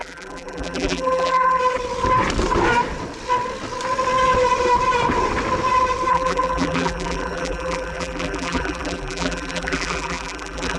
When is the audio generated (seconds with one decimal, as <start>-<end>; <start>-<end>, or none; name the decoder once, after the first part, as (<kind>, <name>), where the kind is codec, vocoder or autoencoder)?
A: 0.0-1.6 (vocoder, BigVGAN v2); 6.1-10.8